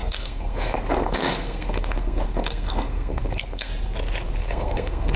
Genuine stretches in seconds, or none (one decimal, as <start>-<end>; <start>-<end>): 3.7-4.4